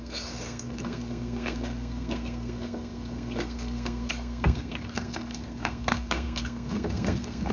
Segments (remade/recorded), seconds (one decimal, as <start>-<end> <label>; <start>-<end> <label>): 0.0-7.5 remade